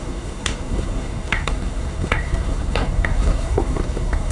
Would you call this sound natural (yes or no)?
no